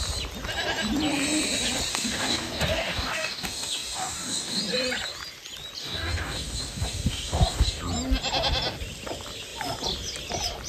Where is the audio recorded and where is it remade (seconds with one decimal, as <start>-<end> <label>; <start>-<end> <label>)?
0.0-1.9 recorded; 1.9-4.6 remade; 4.6-5.8 recorded; 5.8-7.8 remade; 7.8-10.7 recorded